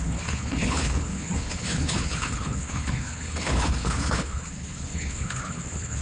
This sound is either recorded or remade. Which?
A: remade